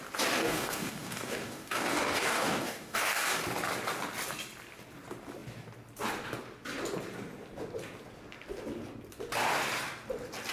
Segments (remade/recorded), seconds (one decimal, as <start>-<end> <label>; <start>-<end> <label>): 0.0-0.4 recorded; 0.4-3.4 remade; 3.4-10.5 recorded